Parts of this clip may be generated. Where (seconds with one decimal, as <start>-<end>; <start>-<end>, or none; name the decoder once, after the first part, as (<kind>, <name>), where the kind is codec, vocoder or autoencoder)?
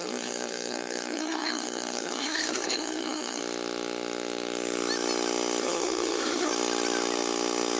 0.0-3.4 (codec, SNAC); 5.6-6.5